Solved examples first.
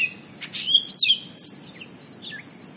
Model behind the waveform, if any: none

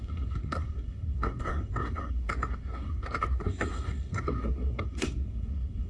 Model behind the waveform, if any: codec, SNAC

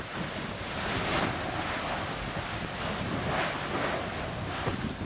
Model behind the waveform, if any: none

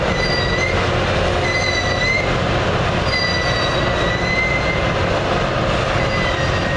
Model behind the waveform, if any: none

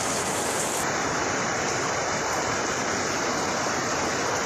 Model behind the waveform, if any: none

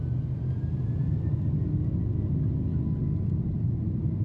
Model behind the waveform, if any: none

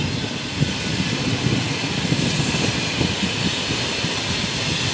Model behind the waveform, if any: none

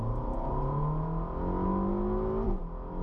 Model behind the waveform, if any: none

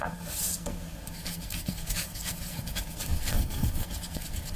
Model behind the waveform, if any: codec, SNAC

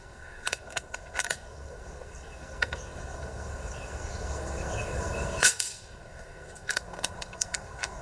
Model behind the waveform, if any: codec, SNAC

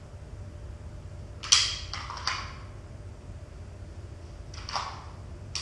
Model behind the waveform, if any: none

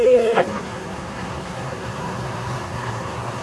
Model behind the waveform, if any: codec, SNAC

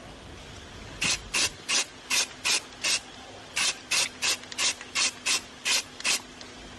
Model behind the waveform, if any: none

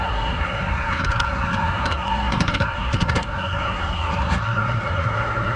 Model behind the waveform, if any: codec, SNAC